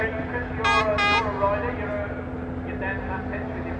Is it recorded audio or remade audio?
recorded